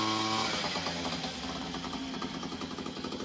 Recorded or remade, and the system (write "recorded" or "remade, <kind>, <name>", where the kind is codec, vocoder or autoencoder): recorded